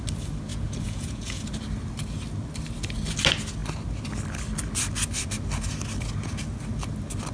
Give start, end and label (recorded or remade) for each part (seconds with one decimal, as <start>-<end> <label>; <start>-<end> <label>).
0.0-0.5 recorded; 0.5-1.5 remade; 1.5-7.3 recorded